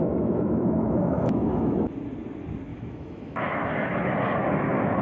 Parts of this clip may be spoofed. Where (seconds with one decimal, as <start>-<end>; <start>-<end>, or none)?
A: 0.0-1.9; 2.7-3.7